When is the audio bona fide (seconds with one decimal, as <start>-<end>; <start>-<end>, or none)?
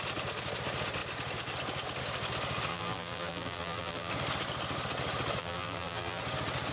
0.0-2.7; 4.1-5.4; 6.2-6.7